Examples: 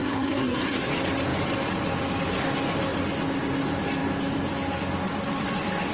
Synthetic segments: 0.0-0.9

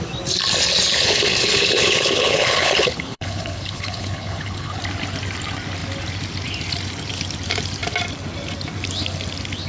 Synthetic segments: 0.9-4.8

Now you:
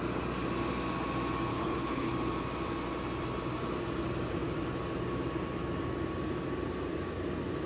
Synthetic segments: 1.5-2.1

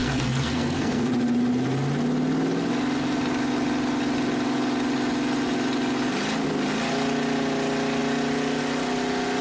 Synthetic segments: 0.0-1.1

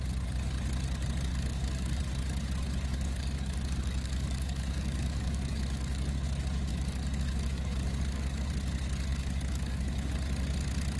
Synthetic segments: 1.3-2.0; 2.9-6.1; 6.7-8.5; 9.1-10.1

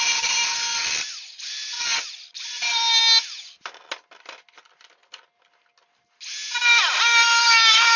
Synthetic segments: none